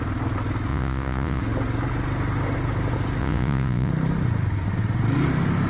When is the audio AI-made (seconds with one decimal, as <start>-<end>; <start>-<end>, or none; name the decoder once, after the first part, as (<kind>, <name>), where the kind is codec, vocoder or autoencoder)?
0.7-1.4 (vocoder, Vocos); 3.2-3.9